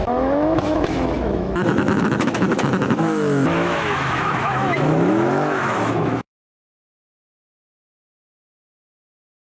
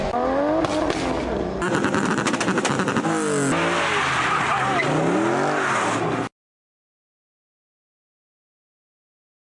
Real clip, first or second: second